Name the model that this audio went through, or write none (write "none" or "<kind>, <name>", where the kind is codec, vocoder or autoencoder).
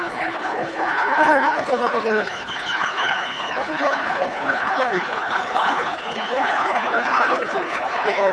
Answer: codec, HILCodec